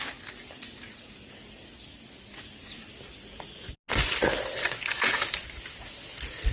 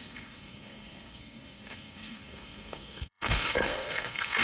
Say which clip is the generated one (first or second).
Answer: second